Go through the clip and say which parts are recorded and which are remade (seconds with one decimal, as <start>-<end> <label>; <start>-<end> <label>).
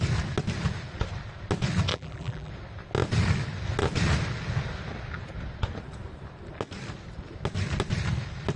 0.0-1.9 recorded; 1.9-2.5 remade; 2.5-8.6 recorded